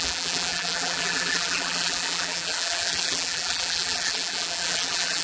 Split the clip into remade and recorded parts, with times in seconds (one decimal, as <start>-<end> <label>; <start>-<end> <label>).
0.0-5.2 remade